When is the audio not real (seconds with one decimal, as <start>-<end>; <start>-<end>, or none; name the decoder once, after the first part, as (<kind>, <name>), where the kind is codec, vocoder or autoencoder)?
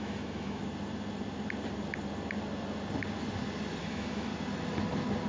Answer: 0.0-0.6 (autoencoder, DAC-VAE); 3.8-4.3